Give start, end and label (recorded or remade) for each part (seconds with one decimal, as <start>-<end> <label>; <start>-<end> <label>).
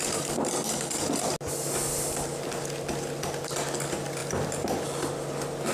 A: 0.0-5.7 recorded